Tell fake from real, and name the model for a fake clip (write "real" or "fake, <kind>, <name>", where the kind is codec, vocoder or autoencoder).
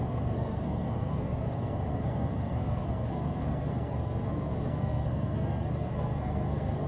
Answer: fake, codec, SNAC